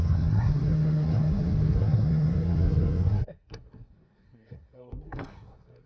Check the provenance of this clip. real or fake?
fake